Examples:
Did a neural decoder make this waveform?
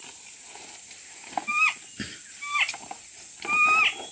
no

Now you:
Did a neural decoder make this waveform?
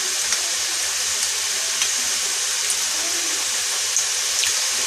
no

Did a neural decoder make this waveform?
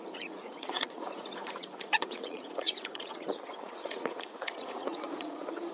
yes